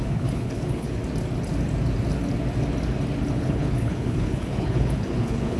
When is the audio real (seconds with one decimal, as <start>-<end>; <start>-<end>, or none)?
1.0-3.3